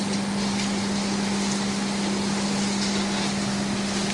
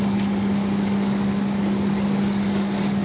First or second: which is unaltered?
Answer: first